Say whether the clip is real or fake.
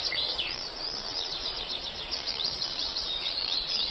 fake